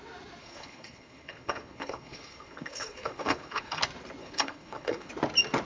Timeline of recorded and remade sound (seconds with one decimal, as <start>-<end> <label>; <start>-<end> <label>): 0.0-0.4 recorded; 0.4-3.8 remade; 3.8-4.2 recorded; 4.2-5.1 remade; 5.1-5.6 recorded